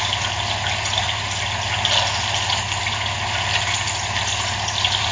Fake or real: real